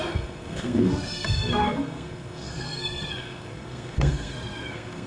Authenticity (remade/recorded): remade